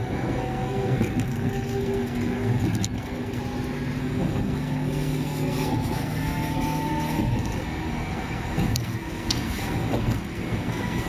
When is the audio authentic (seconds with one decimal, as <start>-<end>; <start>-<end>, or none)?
3.4-4.0